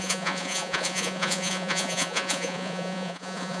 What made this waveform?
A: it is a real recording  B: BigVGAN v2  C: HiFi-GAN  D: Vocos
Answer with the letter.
D